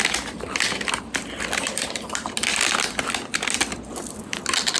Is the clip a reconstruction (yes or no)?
no